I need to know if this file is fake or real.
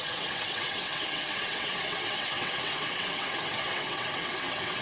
fake